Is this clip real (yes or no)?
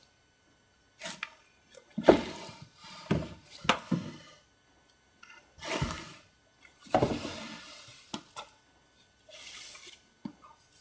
yes